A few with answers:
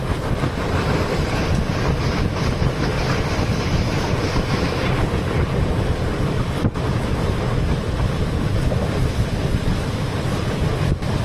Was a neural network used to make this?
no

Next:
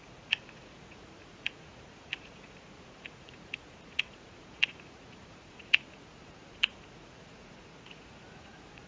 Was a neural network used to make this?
yes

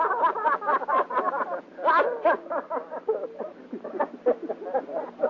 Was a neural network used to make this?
no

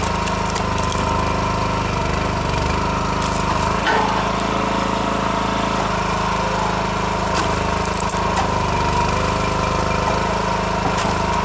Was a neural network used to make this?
no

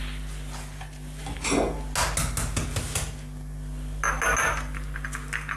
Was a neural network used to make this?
no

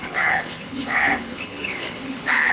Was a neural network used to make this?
yes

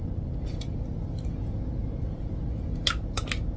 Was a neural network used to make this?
no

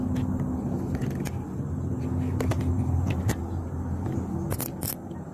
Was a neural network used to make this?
no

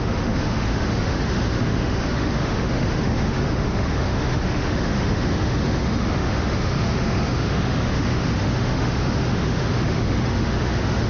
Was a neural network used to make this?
yes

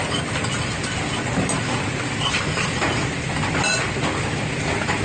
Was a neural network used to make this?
no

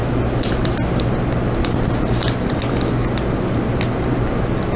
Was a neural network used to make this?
no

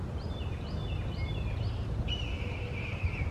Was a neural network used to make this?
no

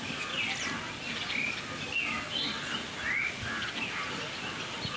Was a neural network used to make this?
no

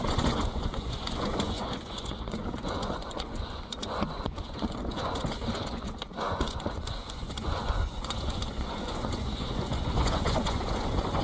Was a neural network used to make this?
yes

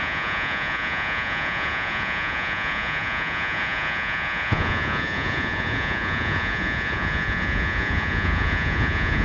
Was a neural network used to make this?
yes